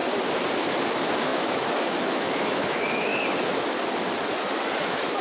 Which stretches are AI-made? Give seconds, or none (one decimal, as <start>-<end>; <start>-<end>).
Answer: 0.7-3.1; 4.8-5.2